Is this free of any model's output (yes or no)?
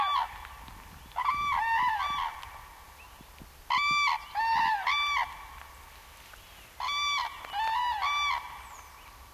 yes